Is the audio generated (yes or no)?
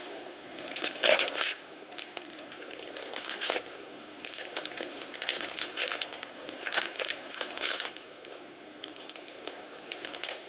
yes